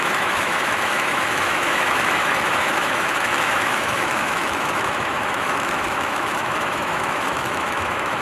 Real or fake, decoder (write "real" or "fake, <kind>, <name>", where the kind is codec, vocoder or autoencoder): fake, autoencoder, DAC-VAE